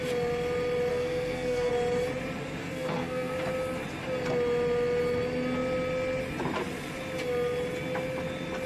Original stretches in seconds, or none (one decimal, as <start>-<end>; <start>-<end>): 0.0-0.9; 1.7-2.6; 3.3-8.7